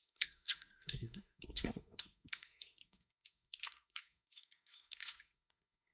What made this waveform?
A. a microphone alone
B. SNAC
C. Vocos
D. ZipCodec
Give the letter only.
B